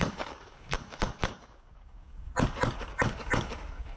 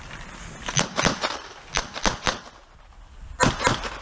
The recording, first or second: second